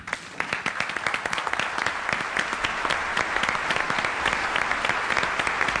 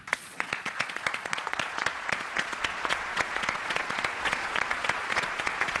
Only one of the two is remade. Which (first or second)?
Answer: second